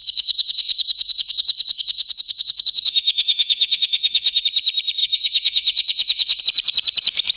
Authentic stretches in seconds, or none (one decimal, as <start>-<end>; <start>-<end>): 4.4-5.0; 6.4-7.4